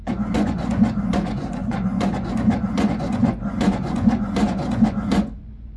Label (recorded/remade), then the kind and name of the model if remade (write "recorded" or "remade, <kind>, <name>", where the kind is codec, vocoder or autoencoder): remade, vocoder, Vocos